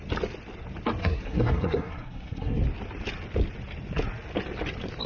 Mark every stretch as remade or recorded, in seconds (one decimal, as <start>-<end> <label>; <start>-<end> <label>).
0.0-1.0 recorded; 1.0-2.6 remade; 2.6-5.1 recorded